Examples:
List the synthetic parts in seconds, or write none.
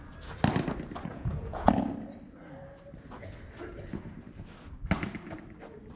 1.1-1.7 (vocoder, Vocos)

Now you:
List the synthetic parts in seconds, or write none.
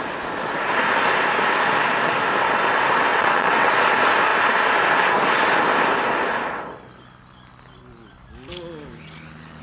3.1-3.7 (vocoder, WaveNeXt)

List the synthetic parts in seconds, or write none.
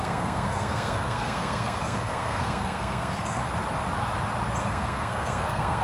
0.0-3.4 (codec, SNAC); 4.6-5.8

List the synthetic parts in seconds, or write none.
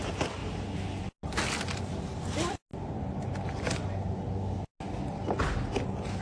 none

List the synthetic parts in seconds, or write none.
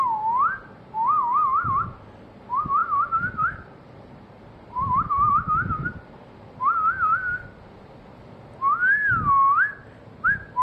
2.8-5.3 (vocoder, BigVGAN v2)